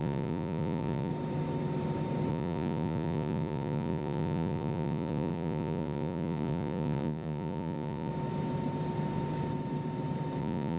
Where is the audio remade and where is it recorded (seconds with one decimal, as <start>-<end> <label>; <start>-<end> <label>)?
0.0-1.1 remade; 1.1-2.3 recorded; 2.3-8.1 remade; 8.1-10.4 recorded; 10.4-10.8 remade